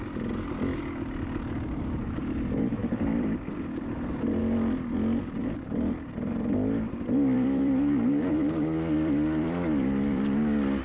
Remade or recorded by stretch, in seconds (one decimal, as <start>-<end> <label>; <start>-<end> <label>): 0.0-2.8 recorded; 2.8-4.4 remade; 4.4-5.4 recorded; 5.4-10.2 remade; 10.2-10.8 recorded